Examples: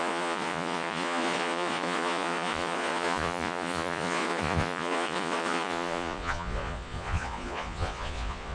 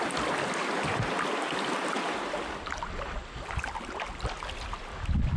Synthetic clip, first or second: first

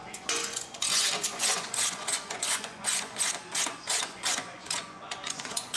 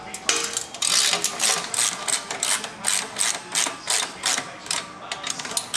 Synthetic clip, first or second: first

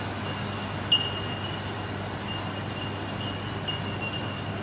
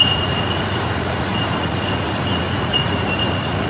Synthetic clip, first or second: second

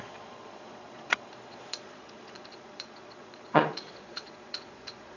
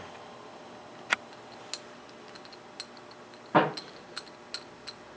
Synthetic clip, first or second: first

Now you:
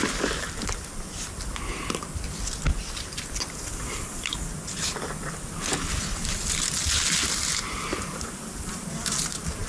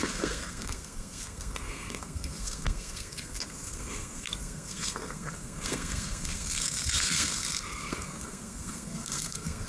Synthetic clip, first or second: second